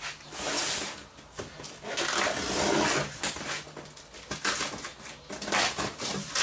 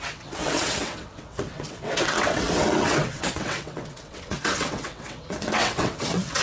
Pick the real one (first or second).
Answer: first